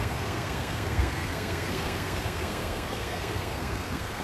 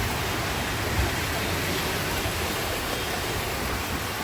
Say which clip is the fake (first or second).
first